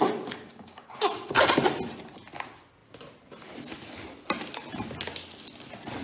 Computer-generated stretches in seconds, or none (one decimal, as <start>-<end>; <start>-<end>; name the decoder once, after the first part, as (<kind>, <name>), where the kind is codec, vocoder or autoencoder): 0.5-1.0 (codec, DAC)